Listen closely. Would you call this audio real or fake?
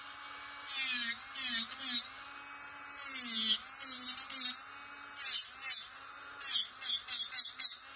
real